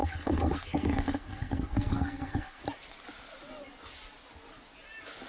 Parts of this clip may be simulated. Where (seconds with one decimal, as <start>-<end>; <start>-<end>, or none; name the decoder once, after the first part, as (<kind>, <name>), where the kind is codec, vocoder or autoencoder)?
0.0-2.6 (codec, SNAC)